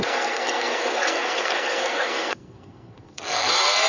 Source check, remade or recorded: remade